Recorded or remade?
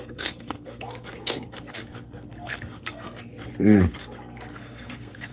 remade